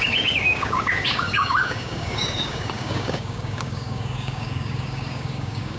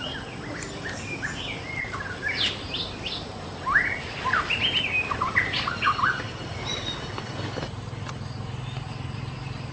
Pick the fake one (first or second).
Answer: first